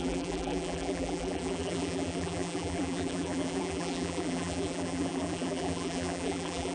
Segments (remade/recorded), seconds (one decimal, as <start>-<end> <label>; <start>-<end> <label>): 0.0-6.7 remade

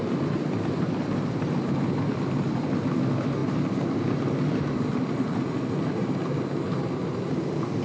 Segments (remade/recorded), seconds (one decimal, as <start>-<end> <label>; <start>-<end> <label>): 0.0-7.8 recorded

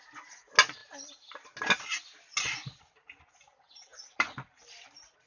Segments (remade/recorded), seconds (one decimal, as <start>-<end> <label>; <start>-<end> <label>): 0.0-3.9 recorded; 3.9-5.3 remade

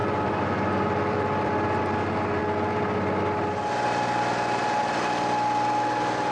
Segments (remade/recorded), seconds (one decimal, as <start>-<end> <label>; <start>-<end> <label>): 0.0-1.8 remade; 1.8-6.3 recorded

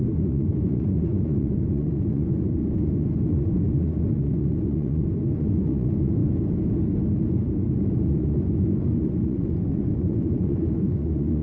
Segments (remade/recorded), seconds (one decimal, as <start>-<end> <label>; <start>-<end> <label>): 0.0-6.2 remade; 6.2-8.1 recorded; 8.1-11.4 remade

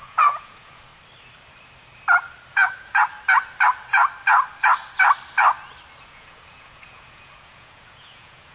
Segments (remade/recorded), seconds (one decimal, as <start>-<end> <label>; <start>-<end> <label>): 0.0-0.9 remade; 0.9-2.5 recorded; 2.5-3.0 remade; 3.0-6.0 recorded; 6.0-8.5 remade

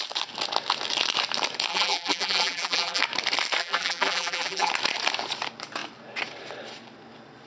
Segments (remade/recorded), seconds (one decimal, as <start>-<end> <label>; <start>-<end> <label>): 0.0-1.7 recorded; 1.7-3.0 remade; 3.0-3.6 recorded; 3.6-4.7 remade; 4.7-7.5 recorded